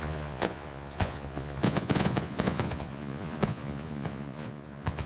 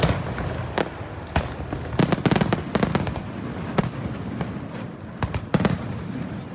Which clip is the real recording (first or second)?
second